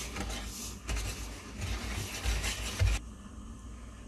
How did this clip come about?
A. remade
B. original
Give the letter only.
B